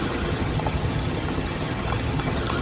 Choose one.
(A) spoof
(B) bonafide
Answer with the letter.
A